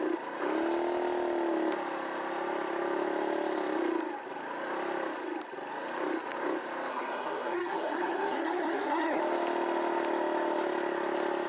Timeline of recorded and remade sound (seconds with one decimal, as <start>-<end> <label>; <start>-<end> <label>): 0.0-6.9 recorded; 6.9-9.2 remade; 9.2-11.5 recorded